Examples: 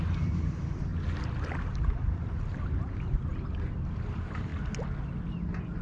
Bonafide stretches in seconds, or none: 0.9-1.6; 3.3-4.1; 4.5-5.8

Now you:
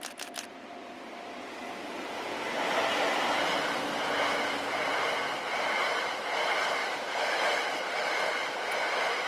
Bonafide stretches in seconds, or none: 0.0-9.3

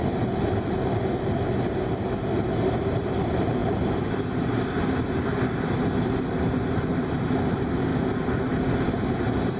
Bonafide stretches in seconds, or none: 0.0-2.5; 7.9-8.6

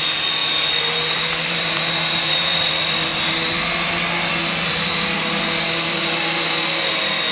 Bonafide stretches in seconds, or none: 0.0-0.4; 2.7-5.9; 6.5-7.3

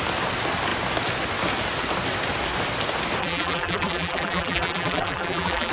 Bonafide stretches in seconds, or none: 0.0-3.2